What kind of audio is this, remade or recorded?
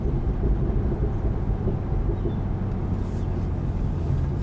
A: recorded